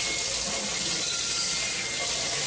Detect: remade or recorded recorded